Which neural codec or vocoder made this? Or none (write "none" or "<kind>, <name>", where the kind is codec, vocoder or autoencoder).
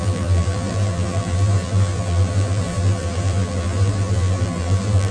vocoder, BigVGAN v2